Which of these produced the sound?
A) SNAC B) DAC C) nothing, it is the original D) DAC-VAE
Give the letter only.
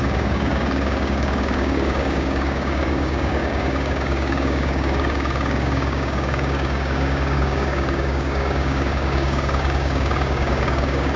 B